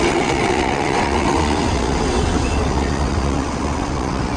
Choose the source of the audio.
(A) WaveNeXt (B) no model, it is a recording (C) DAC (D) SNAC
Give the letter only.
A